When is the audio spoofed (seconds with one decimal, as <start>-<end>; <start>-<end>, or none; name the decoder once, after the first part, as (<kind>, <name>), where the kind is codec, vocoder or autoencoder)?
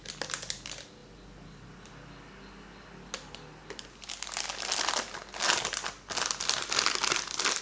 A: none